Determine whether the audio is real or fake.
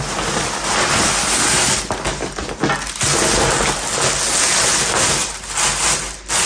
real